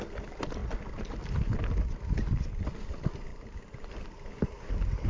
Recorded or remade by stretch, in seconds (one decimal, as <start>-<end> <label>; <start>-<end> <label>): 0.0-3.3 recorded; 3.3-3.9 remade; 3.9-5.1 recorded